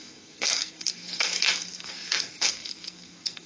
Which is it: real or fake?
fake